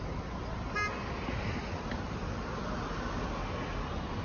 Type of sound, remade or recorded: recorded